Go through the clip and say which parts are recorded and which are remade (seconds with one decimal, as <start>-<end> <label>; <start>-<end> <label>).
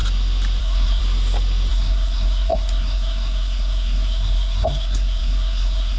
0.0-0.6 recorded; 0.6-1.0 remade; 1.0-1.7 recorded; 1.7-6.0 remade